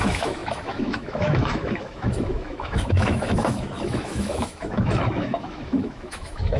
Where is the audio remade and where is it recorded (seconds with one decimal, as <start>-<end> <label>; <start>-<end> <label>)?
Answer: 0.0-6.6 remade